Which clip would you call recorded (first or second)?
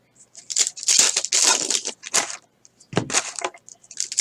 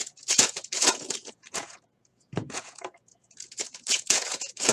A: first